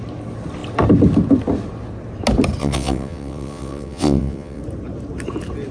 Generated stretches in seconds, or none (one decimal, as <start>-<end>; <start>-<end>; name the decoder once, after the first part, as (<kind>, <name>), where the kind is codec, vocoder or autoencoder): 2.6-4.6 (vocoder, WaveNeXt)